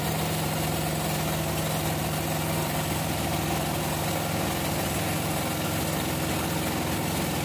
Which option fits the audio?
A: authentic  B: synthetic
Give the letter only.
A